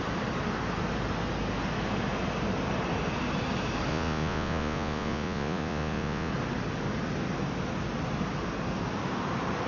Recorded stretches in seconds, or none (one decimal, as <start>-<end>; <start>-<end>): 0.0-3.9; 6.3-9.7